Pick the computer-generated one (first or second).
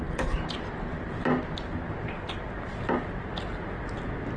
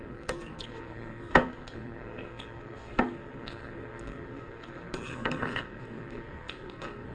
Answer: second